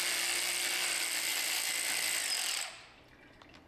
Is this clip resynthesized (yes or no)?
no